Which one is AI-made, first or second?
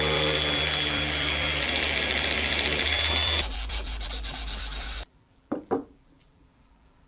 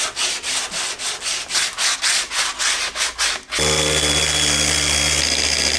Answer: first